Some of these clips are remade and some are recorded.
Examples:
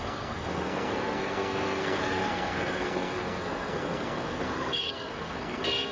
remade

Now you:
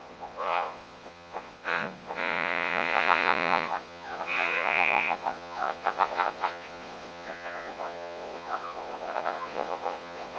remade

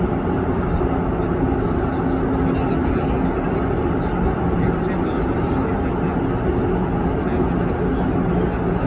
recorded